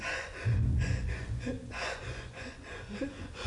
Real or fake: fake